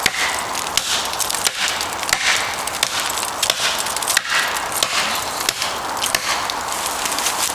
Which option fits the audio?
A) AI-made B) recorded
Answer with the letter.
B